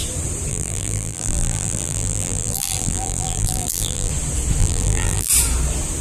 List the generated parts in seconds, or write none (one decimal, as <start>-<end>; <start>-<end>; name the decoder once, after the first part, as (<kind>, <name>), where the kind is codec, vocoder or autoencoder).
0.5-4.1 (vocoder, BigVGAN v2); 4.6-5.3